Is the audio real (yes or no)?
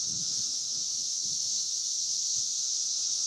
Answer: no